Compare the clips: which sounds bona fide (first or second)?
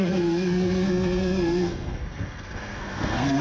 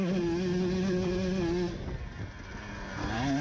second